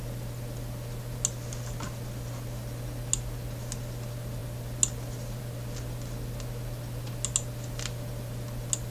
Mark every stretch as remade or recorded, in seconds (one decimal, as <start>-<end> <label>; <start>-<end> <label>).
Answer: 0.0-8.9 recorded